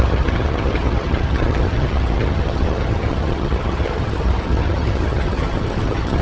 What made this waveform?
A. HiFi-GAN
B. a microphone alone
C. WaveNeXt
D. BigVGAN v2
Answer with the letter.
A